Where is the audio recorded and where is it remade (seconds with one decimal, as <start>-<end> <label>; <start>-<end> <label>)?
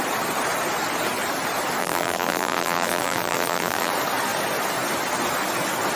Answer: 0.0-1.8 recorded; 1.8-3.9 remade; 3.9-6.0 recorded